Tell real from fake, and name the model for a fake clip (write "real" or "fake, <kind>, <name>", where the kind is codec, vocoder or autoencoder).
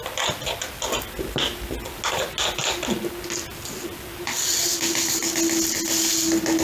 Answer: real